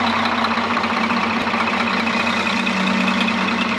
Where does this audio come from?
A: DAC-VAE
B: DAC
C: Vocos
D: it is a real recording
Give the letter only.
D